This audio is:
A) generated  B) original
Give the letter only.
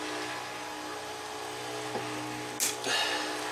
B